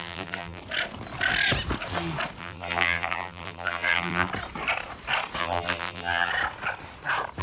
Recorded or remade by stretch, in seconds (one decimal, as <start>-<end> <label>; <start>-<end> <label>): 0.0-0.6 remade; 0.6-2.4 recorded; 2.4-4.3 remade; 4.3-5.4 recorded; 5.4-6.3 remade; 6.3-7.4 recorded